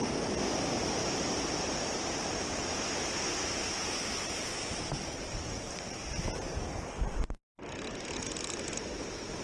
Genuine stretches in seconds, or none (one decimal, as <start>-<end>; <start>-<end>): 0.0-1.0; 6.0-9.4